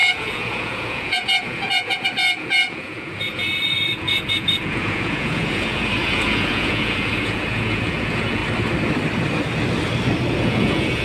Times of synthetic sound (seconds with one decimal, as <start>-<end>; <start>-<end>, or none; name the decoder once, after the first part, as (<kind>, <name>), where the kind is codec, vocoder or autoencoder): 0.0-8.4 (vocoder, Vocos); 10.3-11.0